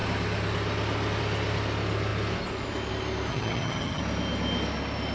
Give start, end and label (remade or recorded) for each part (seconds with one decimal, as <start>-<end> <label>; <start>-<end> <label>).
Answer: 0.0-3.3 recorded; 3.3-4.0 remade; 4.0-5.1 recorded